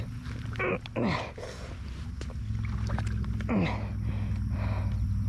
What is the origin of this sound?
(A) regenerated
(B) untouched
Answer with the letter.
B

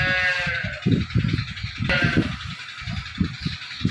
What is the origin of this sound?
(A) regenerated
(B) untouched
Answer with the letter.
B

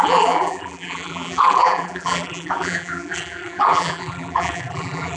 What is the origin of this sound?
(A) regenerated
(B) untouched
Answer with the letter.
A